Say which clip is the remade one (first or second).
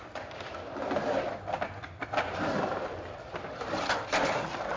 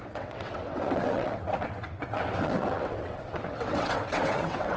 second